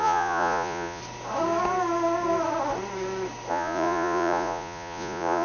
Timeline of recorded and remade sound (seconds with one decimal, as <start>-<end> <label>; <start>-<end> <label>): 0.0-1.0 remade; 1.0-3.5 recorded; 3.5-5.4 remade